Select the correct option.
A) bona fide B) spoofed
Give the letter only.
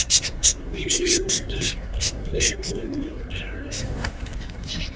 B